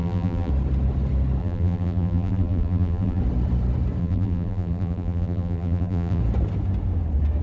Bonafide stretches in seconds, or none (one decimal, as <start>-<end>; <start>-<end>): 0.5-1.4; 3.2-4.0; 6.2-7.4